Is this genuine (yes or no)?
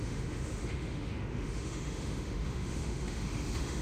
no